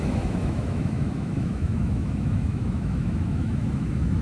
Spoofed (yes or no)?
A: yes